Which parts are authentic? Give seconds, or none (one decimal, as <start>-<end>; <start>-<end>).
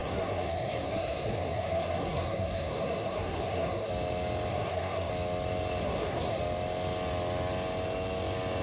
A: 3.9-4.5; 5.1-5.8; 6.4-8.6